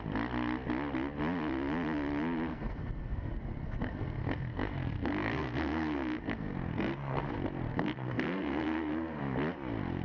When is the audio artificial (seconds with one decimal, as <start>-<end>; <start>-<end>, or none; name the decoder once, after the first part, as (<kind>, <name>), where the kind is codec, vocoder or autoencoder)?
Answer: 2.5-7.2 (codec, SNAC); 7.7-9.2